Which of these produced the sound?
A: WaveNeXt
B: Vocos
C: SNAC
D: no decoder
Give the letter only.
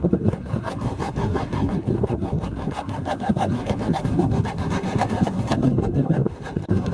C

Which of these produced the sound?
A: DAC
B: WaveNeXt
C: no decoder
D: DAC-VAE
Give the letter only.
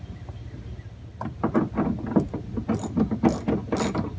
C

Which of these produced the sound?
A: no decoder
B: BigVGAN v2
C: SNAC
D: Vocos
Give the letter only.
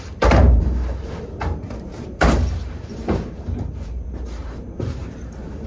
B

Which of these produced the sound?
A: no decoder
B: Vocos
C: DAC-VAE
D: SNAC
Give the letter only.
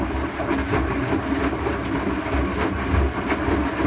A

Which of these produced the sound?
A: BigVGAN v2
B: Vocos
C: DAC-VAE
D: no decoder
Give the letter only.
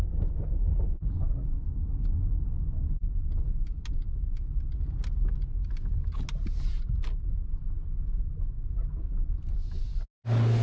D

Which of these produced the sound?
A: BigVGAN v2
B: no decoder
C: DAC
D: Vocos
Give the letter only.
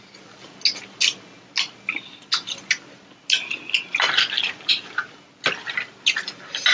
B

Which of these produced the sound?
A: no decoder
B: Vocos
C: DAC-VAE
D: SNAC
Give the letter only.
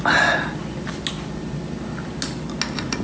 A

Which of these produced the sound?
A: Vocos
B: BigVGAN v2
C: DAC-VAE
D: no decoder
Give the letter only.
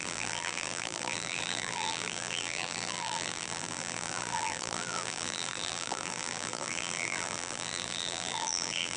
B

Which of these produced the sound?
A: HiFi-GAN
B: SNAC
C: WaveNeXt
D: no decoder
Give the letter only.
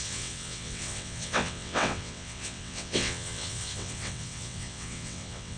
C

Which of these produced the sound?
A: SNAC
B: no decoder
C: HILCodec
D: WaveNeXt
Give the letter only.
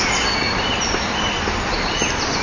B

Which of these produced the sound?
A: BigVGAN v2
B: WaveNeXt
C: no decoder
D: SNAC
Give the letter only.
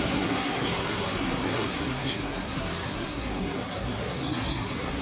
D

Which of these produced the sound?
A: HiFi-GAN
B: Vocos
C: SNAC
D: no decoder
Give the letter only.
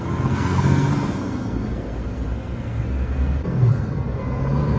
C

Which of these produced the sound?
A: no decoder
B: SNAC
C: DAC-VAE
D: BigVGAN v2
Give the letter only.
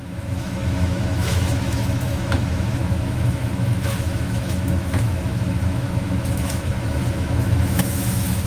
C